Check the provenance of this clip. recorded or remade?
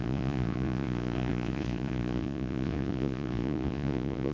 remade